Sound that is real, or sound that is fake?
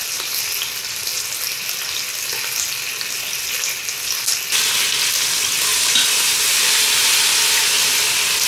real